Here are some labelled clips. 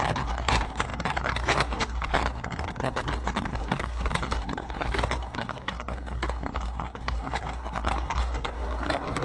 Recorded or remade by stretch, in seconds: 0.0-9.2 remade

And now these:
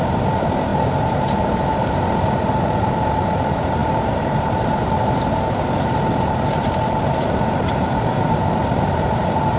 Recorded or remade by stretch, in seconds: 0.0-9.6 remade

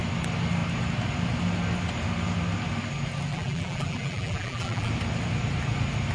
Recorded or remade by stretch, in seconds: 0.0-3.3 recorded; 3.3-4.9 remade; 4.9-6.1 recorded

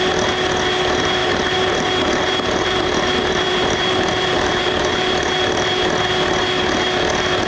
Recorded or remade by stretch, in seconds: 0.0-1.2 recorded; 1.2-5.3 remade; 5.3-7.5 recorded